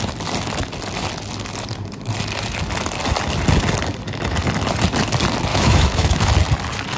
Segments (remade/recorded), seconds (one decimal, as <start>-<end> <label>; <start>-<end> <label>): 0.0-5.5 recorded; 5.5-6.3 remade; 6.3-7.0 recorded